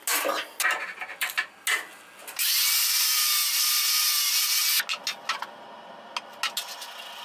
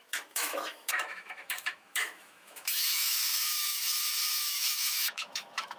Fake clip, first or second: second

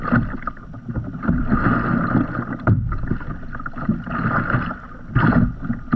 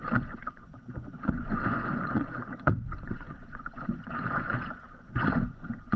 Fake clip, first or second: second